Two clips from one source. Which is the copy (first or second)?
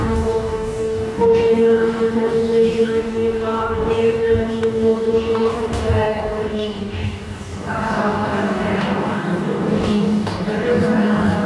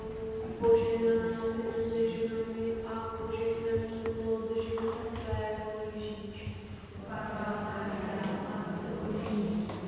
first